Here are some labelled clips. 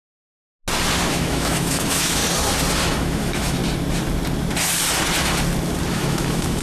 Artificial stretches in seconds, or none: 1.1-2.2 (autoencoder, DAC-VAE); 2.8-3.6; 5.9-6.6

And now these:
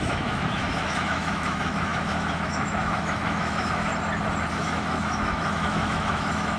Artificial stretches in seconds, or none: 0.0-3.9 (autoencoder, DAC-VAE); 4.5-6.6

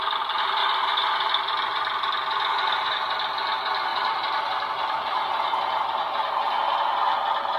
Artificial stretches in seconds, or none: none

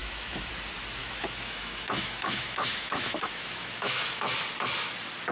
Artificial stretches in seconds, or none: 0.0-0.5 (autoencoder, DAC-VAE); 1.0-4.2

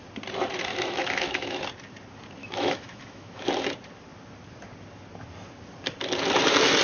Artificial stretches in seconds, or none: 0.7-1.6 (autoencoder, DAC-VAE); 2.4-3.5

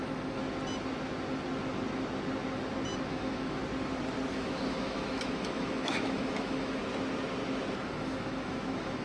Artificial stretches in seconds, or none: 0.0-0.4 (autoencoder, DAC-VAE); 3.1-3.6; 4.3-6.8; 7.8-9.0

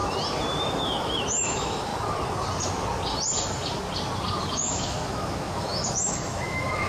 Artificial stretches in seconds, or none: 0.6-1.9 (autoencoder, DAC-VAE); 4.4-6.9

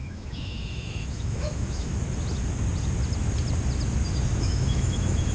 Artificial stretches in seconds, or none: 0.0-1.9 (autoencoder, DAC-VAE); 4.4-5.3